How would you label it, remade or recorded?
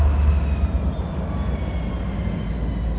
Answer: recorded